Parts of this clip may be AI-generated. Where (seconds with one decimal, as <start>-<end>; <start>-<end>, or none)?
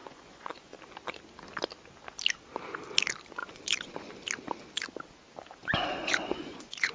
0.0-0.8; 3.4-4.1; 5.6-6.9